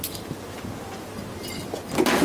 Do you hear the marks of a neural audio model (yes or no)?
no